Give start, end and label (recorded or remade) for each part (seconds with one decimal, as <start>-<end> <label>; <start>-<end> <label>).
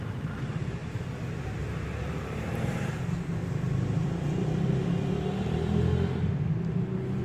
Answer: 0.0-3.4 remade; 3.4-7.2 recorded